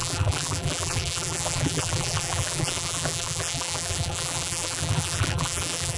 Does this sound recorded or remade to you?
remade